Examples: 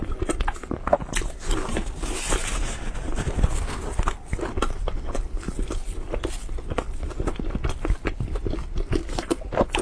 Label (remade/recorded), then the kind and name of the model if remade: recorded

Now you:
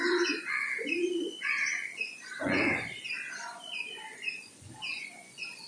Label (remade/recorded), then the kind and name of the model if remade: remade, vocoder, Vocos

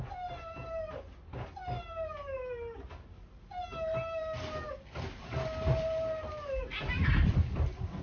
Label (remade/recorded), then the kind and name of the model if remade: recorded